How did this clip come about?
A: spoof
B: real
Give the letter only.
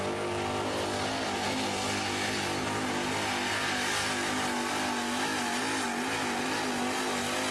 B